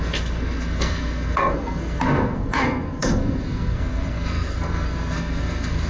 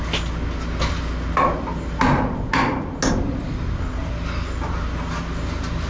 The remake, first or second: first